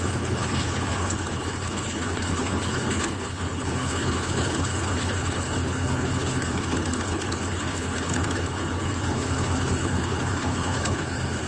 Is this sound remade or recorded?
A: remade